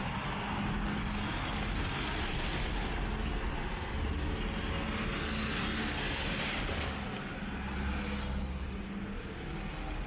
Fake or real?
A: real